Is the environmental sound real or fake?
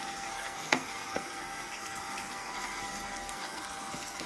fake